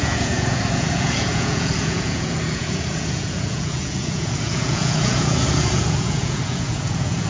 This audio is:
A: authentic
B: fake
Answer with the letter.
B